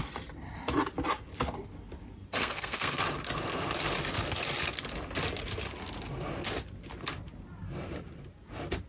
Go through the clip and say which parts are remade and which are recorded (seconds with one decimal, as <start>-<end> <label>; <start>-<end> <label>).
0.0-2.4 recorded; 2.4-3.0 remade; 3.0-8.9 recorded

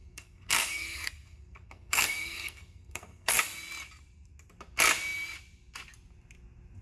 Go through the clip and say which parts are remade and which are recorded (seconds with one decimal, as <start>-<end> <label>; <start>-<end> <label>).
0.0-3.3 remade; 3.3-6.8 recorded